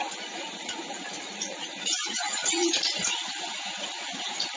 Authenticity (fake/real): fake